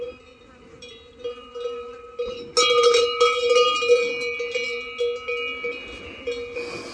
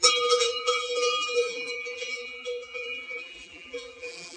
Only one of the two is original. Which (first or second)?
first